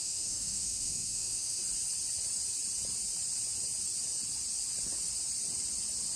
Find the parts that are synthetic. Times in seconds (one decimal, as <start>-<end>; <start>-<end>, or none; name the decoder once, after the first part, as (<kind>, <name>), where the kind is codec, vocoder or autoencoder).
0.0-1.6 (autoencoder, DAC-VAE)